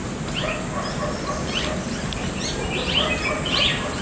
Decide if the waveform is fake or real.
real